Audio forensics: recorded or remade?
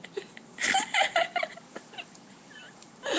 recorded